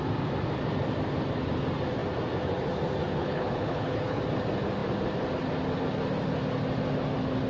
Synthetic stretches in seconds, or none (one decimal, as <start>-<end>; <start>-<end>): 3.2-4.2